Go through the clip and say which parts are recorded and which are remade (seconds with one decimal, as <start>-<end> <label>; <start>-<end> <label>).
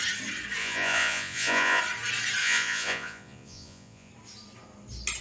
0.0-0.6 recorded; 0.6-1.8 remade; 1.8-2.4 recorded; 2.4-4.1 remade; 4.1-5.2 recorded